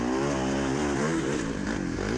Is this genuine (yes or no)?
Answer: yes